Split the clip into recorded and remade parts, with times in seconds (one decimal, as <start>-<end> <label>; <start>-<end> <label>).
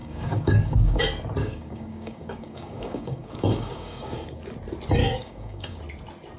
0.0-1.0 remade; 1.0-1.4 recorded; 1.4-4.4 remade; 4.4-5.0 recorded; 5.0-5.8 remade; 5.8-6.4 recorded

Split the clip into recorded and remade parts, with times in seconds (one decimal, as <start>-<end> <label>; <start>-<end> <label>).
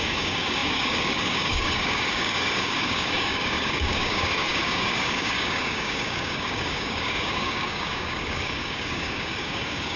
0.0-10.0 remade